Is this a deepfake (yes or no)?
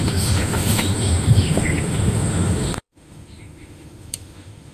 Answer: yes